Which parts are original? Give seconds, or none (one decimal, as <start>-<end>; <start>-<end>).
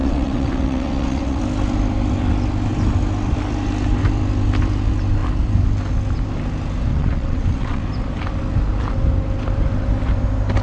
1.4-6.9; 7.8-10.6